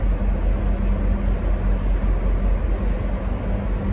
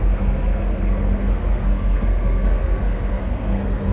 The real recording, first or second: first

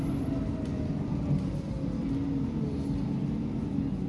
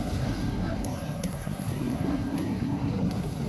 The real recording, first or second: first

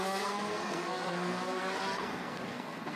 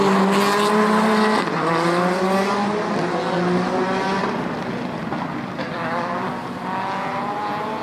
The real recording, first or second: second